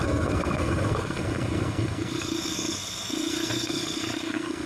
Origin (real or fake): fake